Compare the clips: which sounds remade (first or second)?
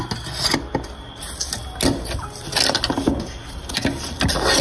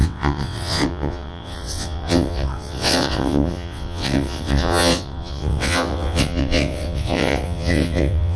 second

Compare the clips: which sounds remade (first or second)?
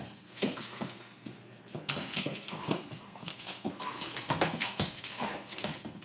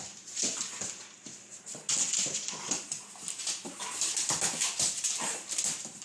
first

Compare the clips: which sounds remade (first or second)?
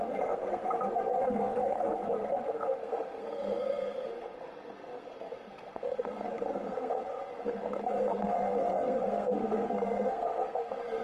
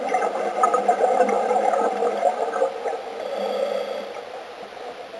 first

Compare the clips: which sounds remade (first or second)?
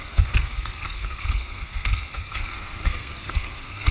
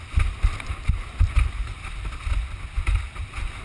first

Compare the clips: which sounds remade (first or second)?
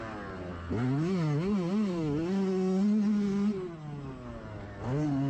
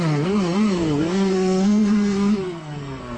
second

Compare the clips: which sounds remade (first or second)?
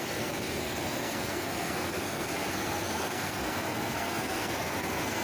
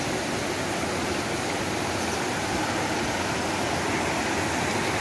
first